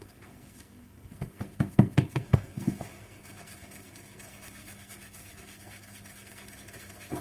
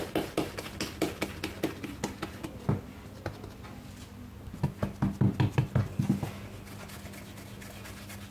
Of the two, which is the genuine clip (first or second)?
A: second